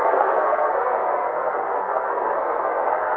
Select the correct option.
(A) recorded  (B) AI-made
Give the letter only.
B